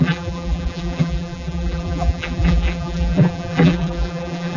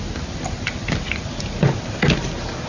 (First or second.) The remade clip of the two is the first